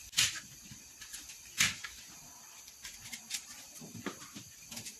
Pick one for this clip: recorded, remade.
recorded